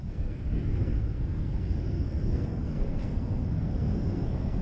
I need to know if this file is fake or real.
fake